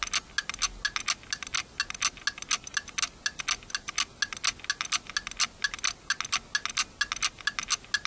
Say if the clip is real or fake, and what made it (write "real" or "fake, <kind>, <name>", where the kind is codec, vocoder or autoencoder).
real